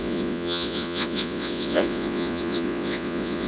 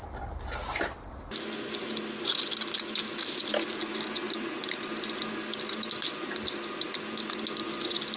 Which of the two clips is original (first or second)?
second